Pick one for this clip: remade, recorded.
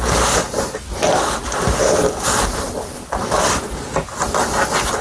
recorded